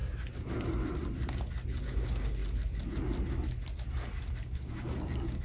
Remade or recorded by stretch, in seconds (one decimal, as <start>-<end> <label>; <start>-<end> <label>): 0.0-1.8 recorded; 1.8-2.4 remade; 2.4-4.4 recorded; 4.4-5.4 remade